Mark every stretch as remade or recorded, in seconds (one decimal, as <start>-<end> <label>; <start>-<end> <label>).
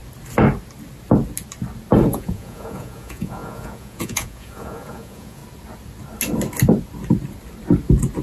0.0-2.1 recorded; 2.1-5.4 remade; 5.4-8.2 recorded